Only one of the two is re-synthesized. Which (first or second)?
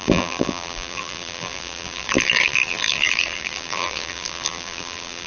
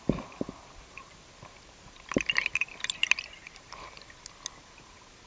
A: first